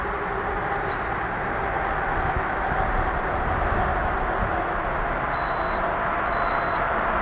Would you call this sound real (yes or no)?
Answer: yes